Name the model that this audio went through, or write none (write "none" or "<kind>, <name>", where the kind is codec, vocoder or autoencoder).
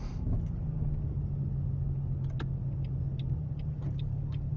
none